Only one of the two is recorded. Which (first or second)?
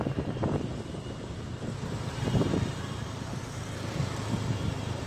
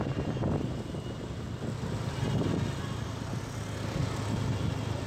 second